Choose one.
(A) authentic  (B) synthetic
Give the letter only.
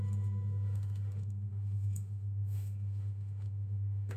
B